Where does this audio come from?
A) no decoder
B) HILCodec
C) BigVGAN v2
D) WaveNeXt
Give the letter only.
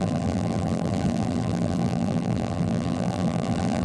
C